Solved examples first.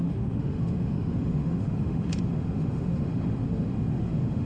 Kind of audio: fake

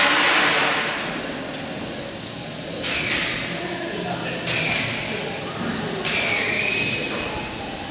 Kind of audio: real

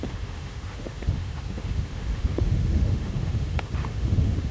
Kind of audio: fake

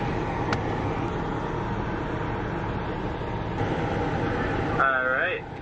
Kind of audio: real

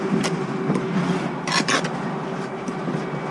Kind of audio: real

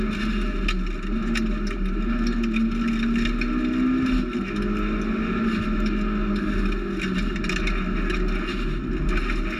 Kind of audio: real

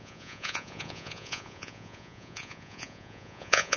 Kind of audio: fake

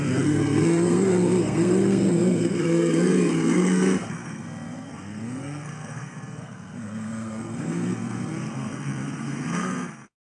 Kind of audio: fake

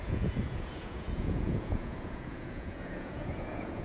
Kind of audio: fake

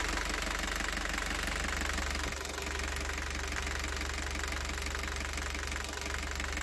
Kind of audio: real